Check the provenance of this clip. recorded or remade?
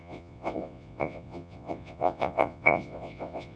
remade